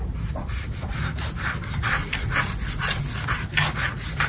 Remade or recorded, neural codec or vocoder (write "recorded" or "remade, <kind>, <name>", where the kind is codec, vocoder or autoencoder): recorded